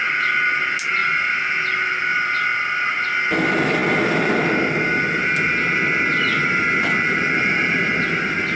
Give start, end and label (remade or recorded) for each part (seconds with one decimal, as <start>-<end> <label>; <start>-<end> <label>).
0.0-8.6 recorded